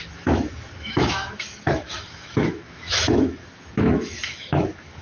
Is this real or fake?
fake